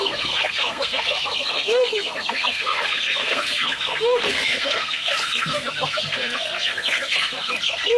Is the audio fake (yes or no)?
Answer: yes